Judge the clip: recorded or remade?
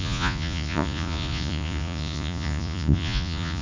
remade